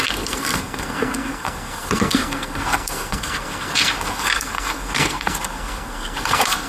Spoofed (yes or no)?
yes